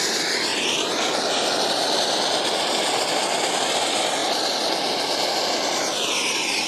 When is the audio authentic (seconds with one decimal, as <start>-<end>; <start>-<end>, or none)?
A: 0.0-6.7